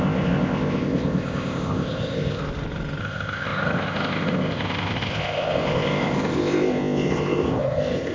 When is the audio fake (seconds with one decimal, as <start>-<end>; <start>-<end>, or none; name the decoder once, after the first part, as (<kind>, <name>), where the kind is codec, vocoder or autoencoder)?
0.0-2.4 (codec, ZipCodec); 3.0-8.1